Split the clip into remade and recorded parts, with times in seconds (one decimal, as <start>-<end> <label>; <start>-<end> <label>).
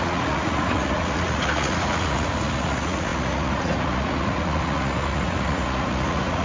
0.0-6.4 remade